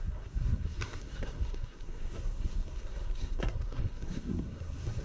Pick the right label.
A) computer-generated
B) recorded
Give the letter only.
A